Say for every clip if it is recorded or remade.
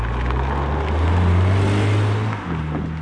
recorded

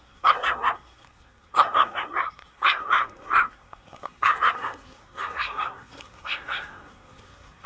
remade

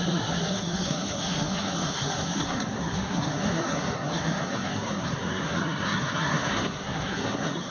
remade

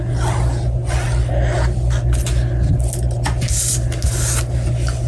recorded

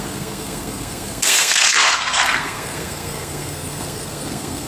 remade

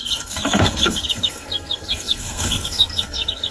remade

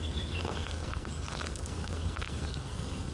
remade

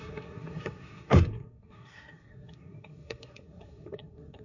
remade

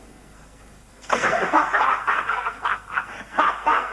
remade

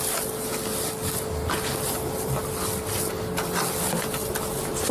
recorded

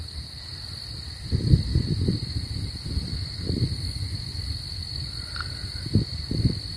recorded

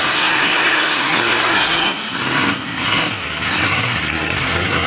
remade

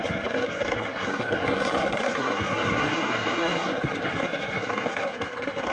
remade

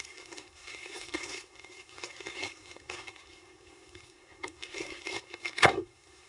remade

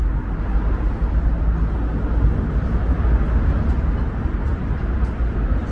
recorded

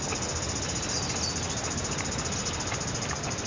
recorded